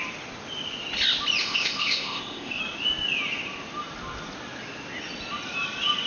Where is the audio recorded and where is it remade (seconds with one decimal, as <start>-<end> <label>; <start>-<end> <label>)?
0.0-1.4 recorded; 1.4-2.6 remade; 2.6-6.1 recorded